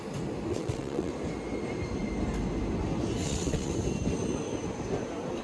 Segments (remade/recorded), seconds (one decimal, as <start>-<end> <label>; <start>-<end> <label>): 0.0-0.5 recorded; 0.5-1.1 remade; 1.1-3.2 recorded; 3.2-3.7 remade; 3.7-5.4 recorded